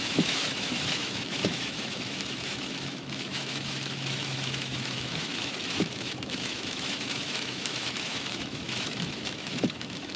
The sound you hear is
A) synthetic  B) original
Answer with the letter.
A